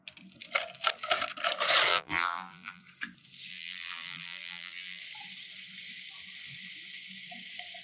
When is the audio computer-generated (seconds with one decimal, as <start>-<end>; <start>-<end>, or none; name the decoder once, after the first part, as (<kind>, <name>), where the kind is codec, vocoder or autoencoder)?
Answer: 1.9-2.8 (vocoder, BigVGAN v2); 3.5-5.0